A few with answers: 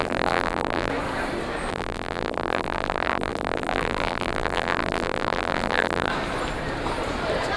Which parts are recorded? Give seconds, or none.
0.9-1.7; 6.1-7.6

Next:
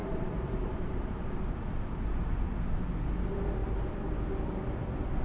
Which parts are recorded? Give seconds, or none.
3.1-5.2

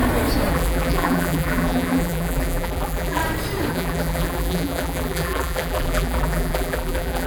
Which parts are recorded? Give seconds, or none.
0.0-0.5; 3.2-3.7

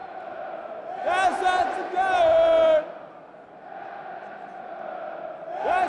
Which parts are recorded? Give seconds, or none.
0.0-5.9

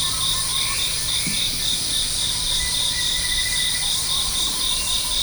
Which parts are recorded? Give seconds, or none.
0.0-5.2

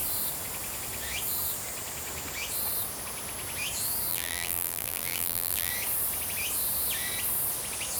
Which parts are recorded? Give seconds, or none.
0.0-4.1; 5.7-8.0